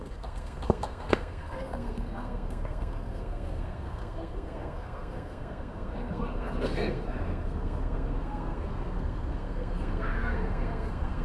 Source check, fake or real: fake